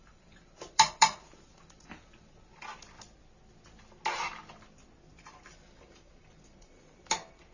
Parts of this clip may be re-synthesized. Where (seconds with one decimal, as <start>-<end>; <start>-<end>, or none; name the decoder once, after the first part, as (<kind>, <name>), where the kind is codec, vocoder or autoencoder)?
0.0-1.5 (vocoder, BigVGAN v2); 5.1-7.5